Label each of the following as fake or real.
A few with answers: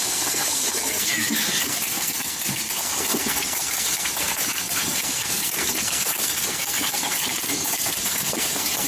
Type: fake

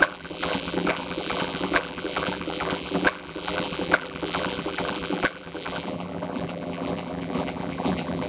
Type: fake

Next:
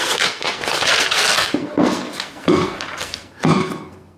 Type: fake